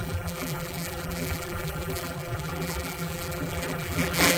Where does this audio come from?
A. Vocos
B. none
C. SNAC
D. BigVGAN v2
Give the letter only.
D